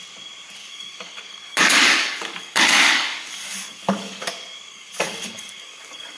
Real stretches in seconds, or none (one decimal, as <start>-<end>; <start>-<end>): 0.0-0.6; 4.3-4.7